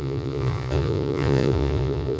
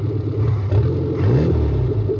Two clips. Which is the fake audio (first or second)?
first